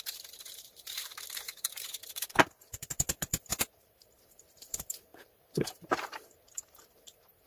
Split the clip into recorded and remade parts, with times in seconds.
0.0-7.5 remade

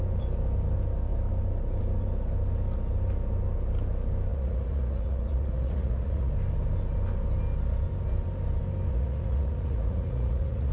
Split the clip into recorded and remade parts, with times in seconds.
0.0-4.3 recorded; 4.3-6.3 remade; 6.3-8.9 recorded; 8.9-10.7 remade

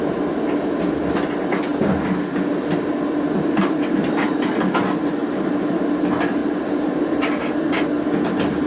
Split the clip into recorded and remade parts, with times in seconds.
0.0-8.7 recorded